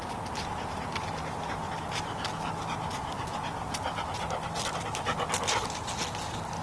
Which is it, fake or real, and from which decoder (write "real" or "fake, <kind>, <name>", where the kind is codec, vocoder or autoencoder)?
real